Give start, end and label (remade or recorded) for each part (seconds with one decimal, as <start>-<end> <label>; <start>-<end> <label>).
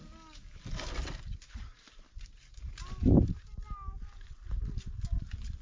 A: 0.0-0.6 remade; 0.6-5.6 recorded